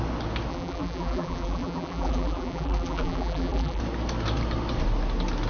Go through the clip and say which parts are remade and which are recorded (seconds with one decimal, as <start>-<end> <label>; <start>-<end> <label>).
0.0-0.5 recorded; 0.5-3.8 remade; 3.8-5.5 recorded